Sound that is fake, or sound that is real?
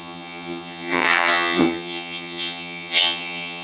fake